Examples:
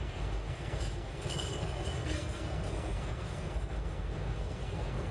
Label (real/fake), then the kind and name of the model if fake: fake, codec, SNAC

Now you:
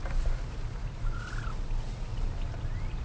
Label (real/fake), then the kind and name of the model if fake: real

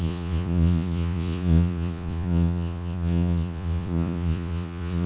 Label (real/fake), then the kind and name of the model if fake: fake, vocoder, Vocos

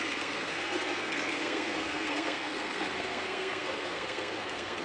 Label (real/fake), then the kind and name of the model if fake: fake, codec, SNAC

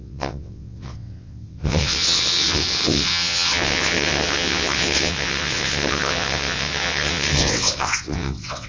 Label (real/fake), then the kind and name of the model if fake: fake, vocoder, WaveNeXt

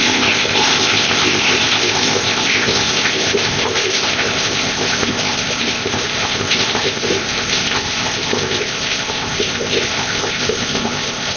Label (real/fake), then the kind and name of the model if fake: fake, codec, ZipCodec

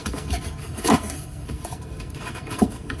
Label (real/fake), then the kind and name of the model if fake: fake, codec, SNAC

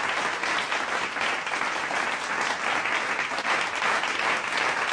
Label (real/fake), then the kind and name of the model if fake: real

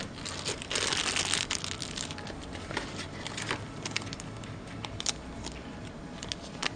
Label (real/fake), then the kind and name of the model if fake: real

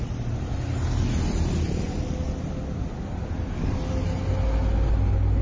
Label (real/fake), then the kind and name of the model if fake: real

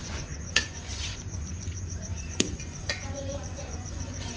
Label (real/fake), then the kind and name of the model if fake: fake, vocoder, Vocos